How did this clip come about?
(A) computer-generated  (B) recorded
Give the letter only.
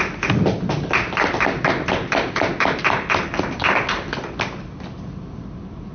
B